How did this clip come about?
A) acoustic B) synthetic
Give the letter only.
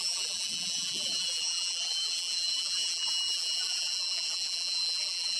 B